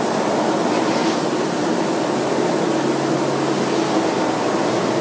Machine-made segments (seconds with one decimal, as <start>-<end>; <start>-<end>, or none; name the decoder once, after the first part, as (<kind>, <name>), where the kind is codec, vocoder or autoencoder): none